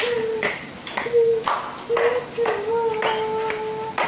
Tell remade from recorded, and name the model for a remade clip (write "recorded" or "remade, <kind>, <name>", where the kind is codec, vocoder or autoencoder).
recorded